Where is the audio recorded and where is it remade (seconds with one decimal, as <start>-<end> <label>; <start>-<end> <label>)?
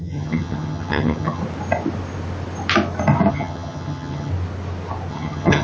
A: 0.0-1.4 remade; 1.4-3.3 recorded; 3.3-4.3 remade; 4.3-5.1 recorded; 5.1-5.6 remade